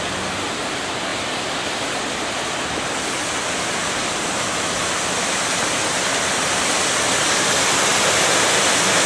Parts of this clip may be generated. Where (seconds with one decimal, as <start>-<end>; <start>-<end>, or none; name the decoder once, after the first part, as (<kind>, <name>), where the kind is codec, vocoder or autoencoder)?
1.1-2.4 (vocoder, BigVGAN v2); 7.9-8.6